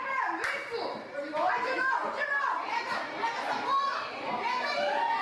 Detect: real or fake real